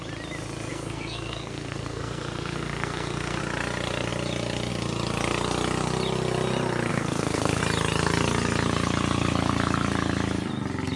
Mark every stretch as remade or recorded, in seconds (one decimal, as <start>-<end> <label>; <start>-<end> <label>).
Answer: 0.0-0.7 recorded; 0.7-3.4 remade; 3.4-6.9 recorded; 6.9-7.6 remade; 7.6-11.0 recorded